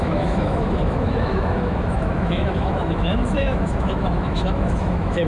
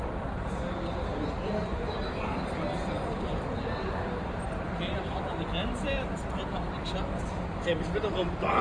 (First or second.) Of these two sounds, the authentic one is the second